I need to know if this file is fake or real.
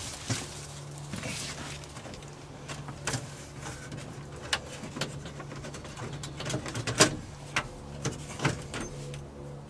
real